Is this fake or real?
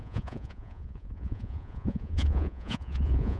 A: fake